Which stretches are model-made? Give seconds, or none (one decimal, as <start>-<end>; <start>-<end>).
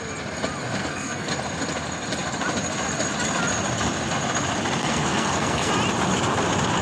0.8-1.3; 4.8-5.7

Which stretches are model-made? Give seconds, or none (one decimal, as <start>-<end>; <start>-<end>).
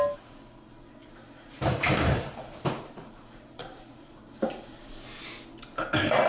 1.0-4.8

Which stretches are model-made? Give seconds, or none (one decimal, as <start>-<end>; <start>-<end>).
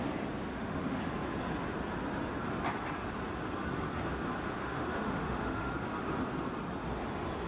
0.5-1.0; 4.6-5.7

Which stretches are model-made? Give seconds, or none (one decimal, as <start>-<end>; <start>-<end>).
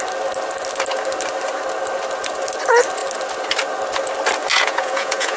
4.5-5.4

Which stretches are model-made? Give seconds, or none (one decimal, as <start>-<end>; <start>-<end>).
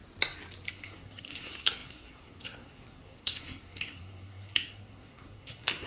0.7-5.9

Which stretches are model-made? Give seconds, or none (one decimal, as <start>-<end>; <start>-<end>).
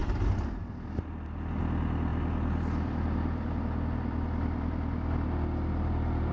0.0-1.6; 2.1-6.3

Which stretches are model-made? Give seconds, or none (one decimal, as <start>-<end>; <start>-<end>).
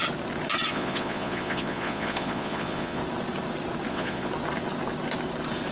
0.7-3.0; 3.9-4.3